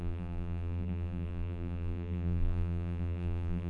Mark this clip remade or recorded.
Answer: remade